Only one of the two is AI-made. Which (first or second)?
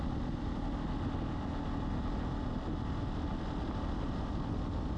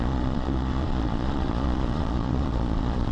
second